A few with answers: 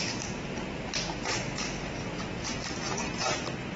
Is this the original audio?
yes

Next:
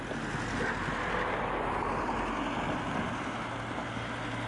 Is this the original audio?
yes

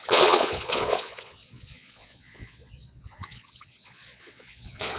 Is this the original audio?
no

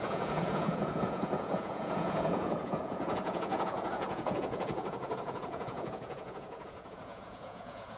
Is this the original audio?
no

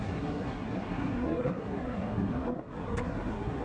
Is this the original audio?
no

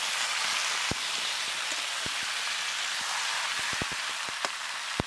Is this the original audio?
yes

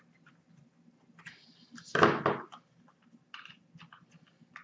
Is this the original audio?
yes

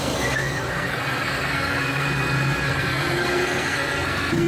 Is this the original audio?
no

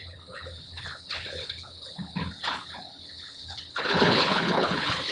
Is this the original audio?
no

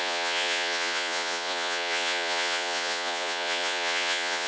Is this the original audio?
no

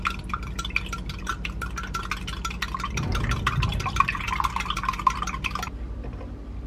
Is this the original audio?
yes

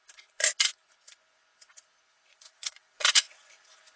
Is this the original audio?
no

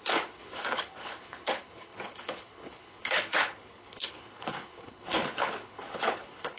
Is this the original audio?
no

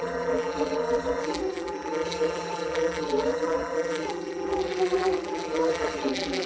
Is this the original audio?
no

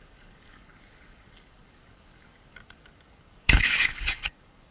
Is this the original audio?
no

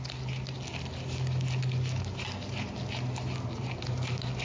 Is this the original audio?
yes